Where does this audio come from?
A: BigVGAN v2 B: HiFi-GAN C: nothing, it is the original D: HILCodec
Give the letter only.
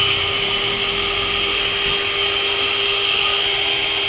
C